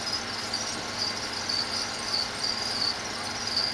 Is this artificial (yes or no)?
no